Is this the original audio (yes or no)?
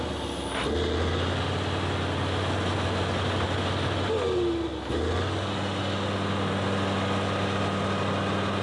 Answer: yes